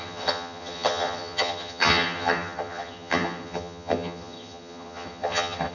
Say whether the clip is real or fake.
fake